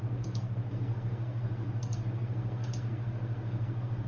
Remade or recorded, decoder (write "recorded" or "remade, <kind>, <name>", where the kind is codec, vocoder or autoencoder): remade, codec, SNAC